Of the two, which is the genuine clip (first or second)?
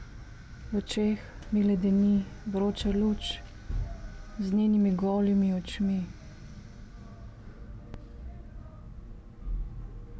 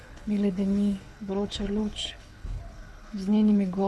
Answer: first